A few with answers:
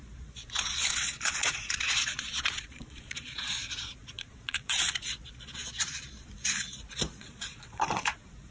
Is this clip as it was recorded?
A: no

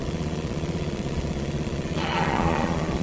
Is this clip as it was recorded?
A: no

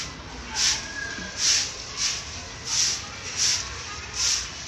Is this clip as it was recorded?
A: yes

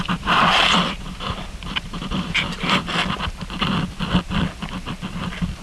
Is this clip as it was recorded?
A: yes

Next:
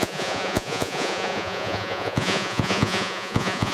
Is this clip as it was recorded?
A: no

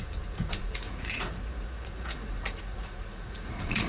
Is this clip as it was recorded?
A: no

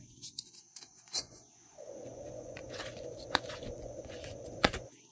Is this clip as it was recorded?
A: no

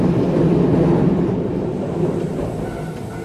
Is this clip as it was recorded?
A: yes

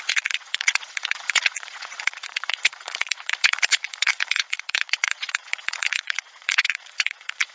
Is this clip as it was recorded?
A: no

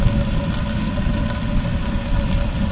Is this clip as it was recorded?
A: yes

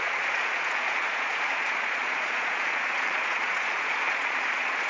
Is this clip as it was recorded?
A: no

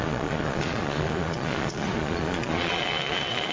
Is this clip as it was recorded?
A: no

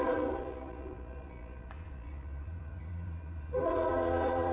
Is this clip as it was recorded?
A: no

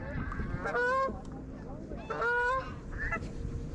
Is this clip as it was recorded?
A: yes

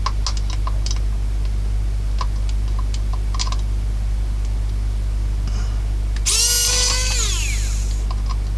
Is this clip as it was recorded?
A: yes